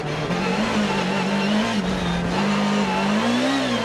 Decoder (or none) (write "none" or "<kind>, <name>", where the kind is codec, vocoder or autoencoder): none